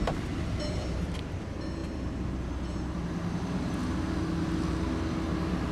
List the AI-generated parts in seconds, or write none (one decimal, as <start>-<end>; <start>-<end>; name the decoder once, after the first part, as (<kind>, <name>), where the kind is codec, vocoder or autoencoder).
0.0-3.8 (vocoder, BigVGAN v2)